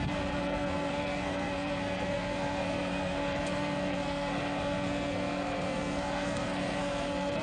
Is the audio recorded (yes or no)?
no